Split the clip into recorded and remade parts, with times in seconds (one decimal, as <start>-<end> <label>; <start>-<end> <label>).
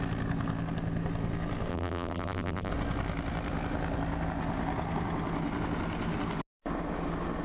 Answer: 0.0-1.7 recorded; 1.7-2.7 remade; 2.7-7.4 recorded